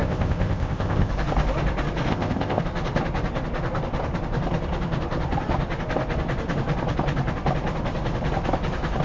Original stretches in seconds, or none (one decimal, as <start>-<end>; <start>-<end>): 1.1-2.1; 2.6-9.0